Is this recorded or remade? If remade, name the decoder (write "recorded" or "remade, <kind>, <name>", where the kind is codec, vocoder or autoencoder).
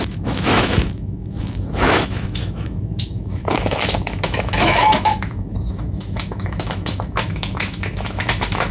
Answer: remade, autoencoder, DAC-VAE